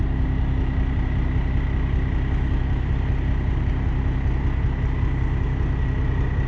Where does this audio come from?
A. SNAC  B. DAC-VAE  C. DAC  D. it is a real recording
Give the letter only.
D